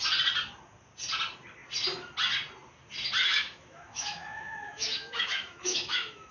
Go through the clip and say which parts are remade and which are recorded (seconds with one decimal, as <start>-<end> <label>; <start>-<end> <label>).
0.0-3.2 recorded; 3.2-6.3 remade